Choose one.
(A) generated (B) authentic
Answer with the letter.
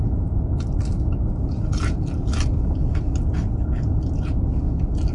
B